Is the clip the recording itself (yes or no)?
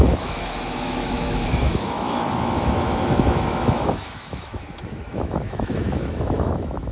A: no